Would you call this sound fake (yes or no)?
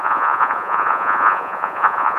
yes